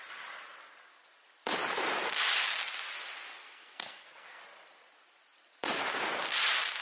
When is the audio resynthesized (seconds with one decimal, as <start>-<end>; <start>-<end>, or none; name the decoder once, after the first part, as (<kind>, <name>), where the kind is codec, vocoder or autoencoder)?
3.4-4.4 (codec, SNAC)